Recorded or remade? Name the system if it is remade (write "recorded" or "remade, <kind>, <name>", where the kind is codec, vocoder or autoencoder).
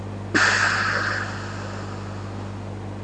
recorded